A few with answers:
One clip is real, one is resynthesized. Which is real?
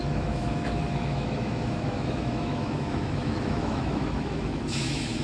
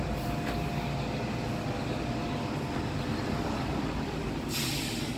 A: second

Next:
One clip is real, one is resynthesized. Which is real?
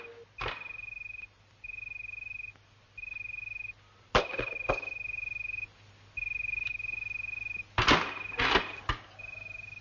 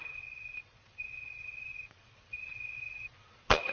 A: first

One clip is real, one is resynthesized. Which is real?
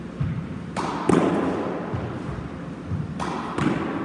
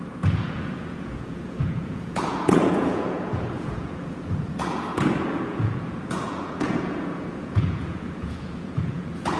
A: first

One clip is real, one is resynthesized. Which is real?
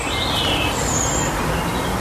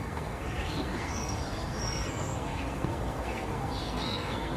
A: first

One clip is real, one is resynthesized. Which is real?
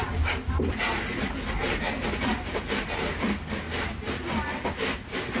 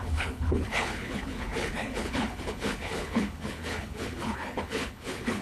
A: first